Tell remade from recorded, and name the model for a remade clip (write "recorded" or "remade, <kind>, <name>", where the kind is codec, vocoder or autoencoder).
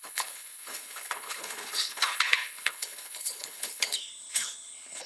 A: remade, codec, HILCodec